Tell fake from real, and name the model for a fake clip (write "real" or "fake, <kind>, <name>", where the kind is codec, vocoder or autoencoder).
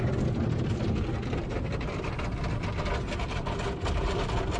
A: real